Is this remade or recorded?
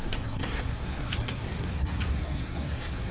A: remade